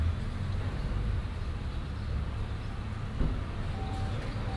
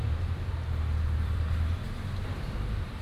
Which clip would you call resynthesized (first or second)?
second